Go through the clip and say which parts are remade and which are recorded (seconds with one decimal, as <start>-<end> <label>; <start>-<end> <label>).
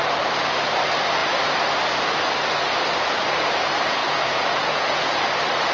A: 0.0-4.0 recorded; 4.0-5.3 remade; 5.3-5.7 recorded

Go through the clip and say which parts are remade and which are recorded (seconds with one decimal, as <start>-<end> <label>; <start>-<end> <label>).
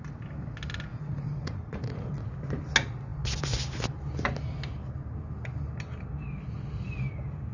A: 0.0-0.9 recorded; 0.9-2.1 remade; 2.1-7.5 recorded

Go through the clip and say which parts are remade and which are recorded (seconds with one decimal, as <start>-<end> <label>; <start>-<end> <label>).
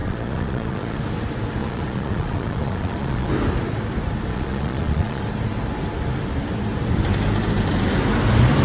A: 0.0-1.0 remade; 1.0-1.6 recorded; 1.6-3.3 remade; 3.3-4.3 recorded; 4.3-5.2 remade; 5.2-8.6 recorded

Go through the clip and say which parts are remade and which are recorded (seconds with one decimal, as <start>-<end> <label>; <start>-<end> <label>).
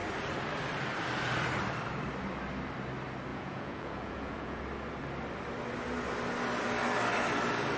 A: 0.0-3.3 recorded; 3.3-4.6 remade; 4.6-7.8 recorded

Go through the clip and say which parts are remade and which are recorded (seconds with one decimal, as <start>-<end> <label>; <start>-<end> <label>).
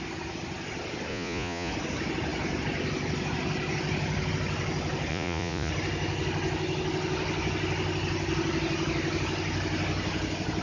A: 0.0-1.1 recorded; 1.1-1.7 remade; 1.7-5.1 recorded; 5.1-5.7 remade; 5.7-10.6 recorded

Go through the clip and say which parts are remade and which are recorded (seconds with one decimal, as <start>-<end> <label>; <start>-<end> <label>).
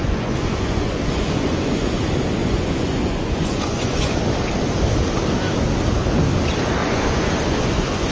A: 0.0-2.0 remade; 2.0-2.4 recorded; 2.4-4.2 remade; 4.2-6.8 recorded; 6.8-8.1 remade